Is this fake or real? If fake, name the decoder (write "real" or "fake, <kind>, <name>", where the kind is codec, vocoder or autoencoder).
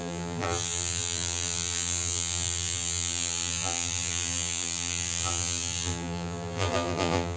fake, vocoder, BigVGAN v2